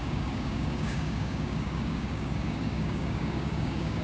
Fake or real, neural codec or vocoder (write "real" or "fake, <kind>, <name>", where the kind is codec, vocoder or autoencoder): fake, codec, DAC